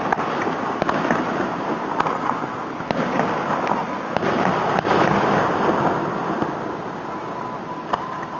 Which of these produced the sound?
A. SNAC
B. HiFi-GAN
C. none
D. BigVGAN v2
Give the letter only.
C